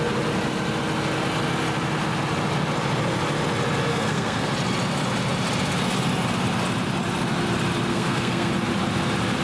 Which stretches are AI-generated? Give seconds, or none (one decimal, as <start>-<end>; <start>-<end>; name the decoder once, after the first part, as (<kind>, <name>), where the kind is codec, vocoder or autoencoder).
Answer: 3.9-4.5 (codec, SNAC); 7.9-8.5